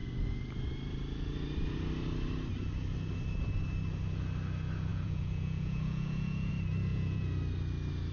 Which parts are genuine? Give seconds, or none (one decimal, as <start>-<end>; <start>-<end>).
0.0-4.9; 6.5-6.9; 7.4-8.1